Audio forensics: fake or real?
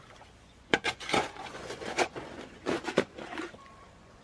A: fake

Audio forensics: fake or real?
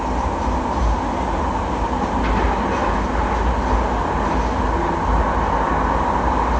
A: real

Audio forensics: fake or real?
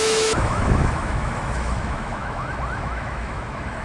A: fake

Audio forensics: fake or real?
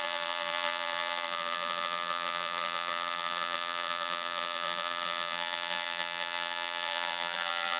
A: fake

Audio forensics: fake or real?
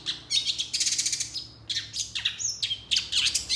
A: real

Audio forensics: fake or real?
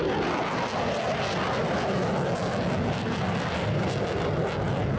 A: real